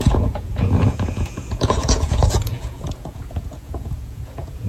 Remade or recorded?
remade